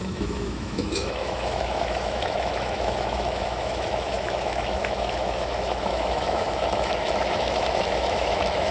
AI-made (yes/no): yes